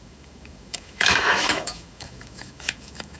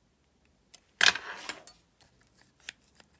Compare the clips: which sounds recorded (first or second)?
second